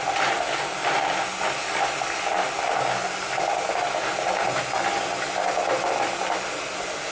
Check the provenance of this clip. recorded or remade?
recorded